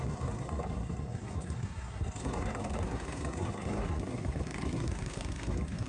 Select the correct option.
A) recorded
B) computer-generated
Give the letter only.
B